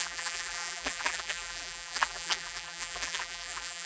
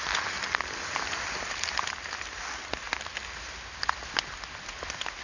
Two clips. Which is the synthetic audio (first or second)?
first